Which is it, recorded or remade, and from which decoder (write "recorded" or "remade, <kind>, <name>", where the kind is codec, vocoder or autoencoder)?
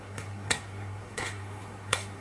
remade, codec, SNAC